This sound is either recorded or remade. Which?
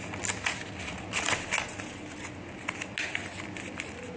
recorded